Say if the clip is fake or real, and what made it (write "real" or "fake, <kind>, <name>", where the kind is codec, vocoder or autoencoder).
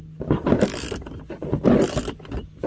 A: real